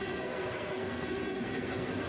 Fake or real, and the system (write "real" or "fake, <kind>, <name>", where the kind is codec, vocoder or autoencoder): fake, codec, SNAC